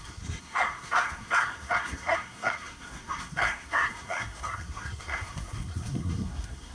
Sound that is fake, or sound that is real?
fake